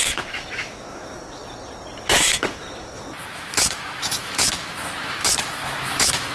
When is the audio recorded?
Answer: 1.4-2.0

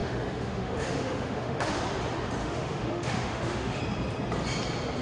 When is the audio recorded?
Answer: 1.8-2.4; 3.8-5.0

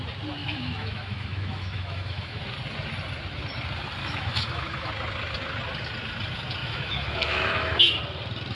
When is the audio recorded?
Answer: 0.0-0.4; 2.4-4.0; 4.9-6.6; 8.0-8.5

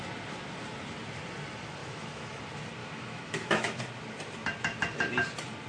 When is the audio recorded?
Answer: 0.0-1.8; 2.3-2.8; 3.8-5.7

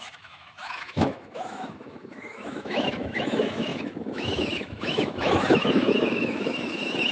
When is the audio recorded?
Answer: none

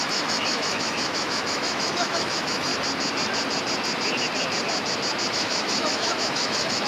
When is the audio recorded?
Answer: 2.7-5.3

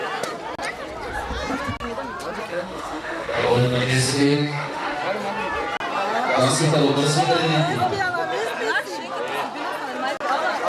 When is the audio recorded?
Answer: 0.0-2.5; 5.0-10.7